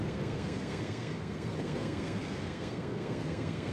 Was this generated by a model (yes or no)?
yes